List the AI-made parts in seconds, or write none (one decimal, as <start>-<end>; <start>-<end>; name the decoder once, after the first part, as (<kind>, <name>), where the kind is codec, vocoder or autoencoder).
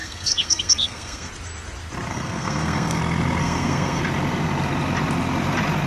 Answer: 0.0-1.3 (codec, SNAC); 2.1-3.0; 3.4-4.0